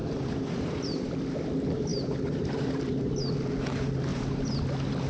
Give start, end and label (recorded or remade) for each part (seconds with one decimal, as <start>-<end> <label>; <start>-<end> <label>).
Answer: 0.0-1.1 remade; 1.1-1.9 recorded; 1.9-2.8 remade; 2.8-4.1 recorded; 4.1-4.6 remade; 4.6-5.1 recorded